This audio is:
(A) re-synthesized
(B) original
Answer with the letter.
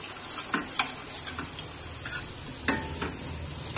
B